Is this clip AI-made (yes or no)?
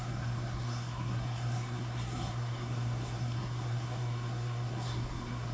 yes